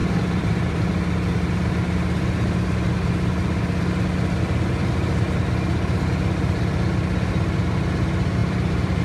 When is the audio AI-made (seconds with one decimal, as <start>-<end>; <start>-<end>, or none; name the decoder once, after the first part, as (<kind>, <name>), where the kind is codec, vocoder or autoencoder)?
0.0-0.9 (vocoder, BigVGAN v2); 8.4-9.0